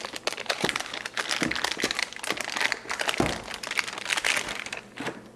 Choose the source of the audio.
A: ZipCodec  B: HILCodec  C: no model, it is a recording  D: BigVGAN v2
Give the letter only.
C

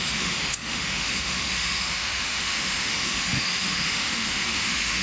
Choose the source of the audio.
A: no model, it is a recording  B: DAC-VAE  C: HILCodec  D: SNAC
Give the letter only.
B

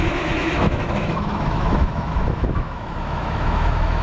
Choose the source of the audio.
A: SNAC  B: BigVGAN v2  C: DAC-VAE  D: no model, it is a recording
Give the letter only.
C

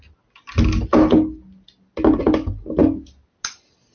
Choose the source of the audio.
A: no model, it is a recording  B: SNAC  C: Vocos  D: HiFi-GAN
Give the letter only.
A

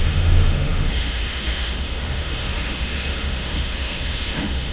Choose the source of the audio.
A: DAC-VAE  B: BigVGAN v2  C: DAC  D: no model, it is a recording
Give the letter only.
A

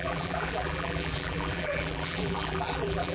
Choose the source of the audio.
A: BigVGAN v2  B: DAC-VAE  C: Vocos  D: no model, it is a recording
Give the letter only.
A